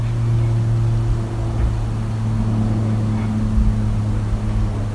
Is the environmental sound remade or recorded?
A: recorded